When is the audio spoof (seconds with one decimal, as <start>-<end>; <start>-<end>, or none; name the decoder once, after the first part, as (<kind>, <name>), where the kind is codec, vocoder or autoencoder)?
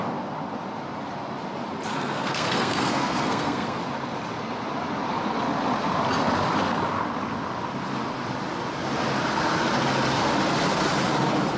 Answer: 1.9-3.8 (codec, SNAC)